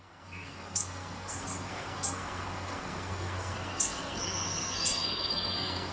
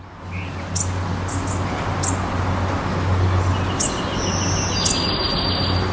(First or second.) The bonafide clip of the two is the second